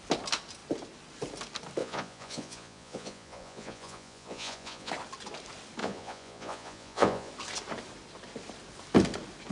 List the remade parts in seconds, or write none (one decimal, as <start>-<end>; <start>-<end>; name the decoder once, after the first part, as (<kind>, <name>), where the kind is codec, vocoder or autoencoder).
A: 1.8-4.9 (vocoder, Vocos); 5.8-7.3